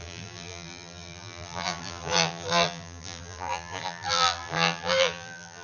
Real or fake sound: fake